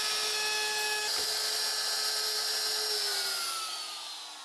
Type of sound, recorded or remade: recorded